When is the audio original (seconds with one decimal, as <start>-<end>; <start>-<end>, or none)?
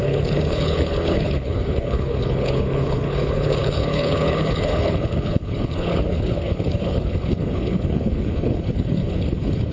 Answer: none